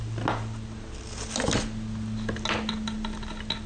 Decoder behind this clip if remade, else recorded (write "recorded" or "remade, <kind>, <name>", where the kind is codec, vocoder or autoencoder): recorded